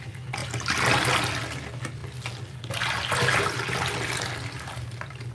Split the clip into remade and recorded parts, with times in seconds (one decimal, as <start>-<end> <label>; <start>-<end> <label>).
0.0-5.3 recorded